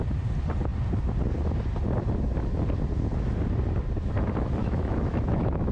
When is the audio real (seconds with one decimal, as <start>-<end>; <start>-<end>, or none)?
0.0-4.6